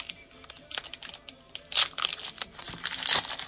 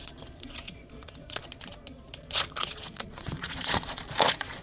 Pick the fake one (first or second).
second